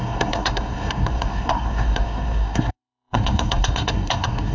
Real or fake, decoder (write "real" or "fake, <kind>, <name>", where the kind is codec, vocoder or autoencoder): fake, codec, SNAC